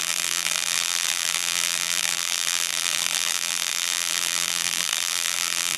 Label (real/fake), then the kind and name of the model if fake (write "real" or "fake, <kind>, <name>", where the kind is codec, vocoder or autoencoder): fake, vocoder, BigVGAN v2